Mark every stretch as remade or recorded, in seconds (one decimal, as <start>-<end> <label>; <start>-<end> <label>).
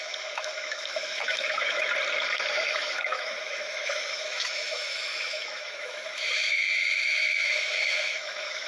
0.0-1.9 remade; 1.9-2.5 recorded; 2.5-8.7 remade